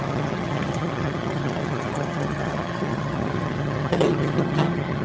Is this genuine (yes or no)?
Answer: no